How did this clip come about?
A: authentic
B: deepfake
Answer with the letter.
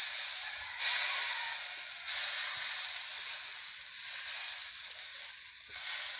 A